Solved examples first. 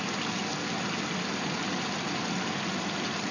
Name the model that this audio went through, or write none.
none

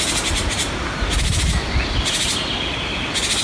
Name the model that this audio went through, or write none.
none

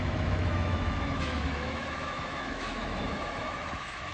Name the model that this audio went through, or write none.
autoencoder, DAC-VAE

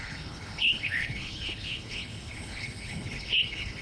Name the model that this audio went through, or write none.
codec, HILCodec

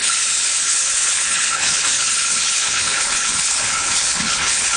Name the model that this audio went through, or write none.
codec, HILCodec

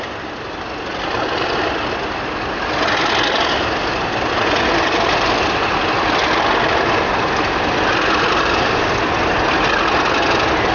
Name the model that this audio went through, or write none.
none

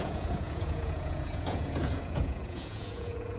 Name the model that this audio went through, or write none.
vocoder, Vocos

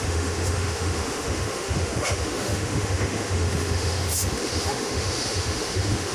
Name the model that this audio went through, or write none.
autoencoder, DAC-VAE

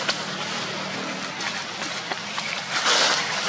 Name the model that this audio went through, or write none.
none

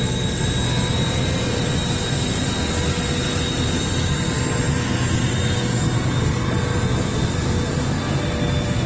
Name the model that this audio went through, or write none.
none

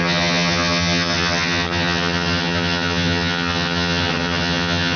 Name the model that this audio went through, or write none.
vocoder, HiFi-GAN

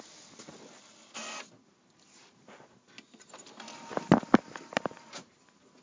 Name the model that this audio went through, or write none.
none